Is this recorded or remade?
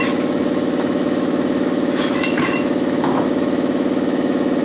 remade